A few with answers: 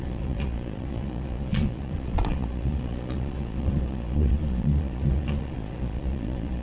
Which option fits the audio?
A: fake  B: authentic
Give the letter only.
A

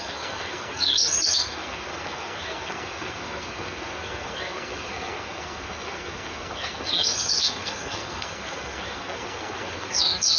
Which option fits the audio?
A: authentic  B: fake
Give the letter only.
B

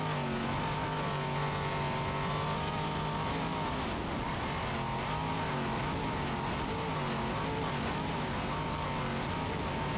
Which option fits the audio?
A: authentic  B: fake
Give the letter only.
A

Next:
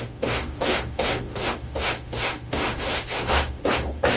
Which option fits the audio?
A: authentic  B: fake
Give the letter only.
B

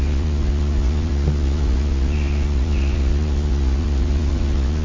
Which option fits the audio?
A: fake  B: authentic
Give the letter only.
A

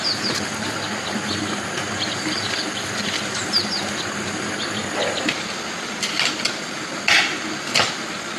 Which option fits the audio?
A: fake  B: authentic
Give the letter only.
B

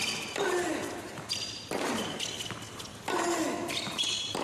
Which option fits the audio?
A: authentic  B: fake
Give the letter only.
A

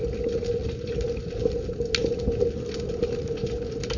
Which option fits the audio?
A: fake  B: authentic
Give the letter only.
B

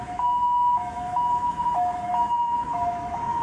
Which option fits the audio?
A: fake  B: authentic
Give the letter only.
A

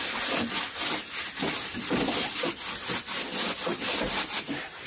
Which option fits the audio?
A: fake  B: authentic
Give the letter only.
B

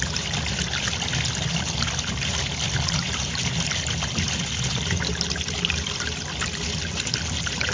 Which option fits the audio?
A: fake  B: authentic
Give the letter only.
B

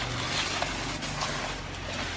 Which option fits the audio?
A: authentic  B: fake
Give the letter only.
A